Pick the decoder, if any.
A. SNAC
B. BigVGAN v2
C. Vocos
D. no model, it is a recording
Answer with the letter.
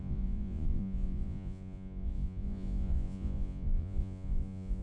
C